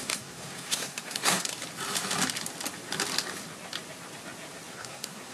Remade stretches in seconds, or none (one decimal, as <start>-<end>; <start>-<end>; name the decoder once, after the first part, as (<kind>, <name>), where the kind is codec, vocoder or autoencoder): 0.0-1.5 (codec, SNAC); 4.7-5.3